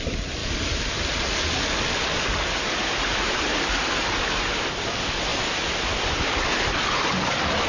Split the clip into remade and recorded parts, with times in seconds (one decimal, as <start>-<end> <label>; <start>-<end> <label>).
0.0-7.7 recorded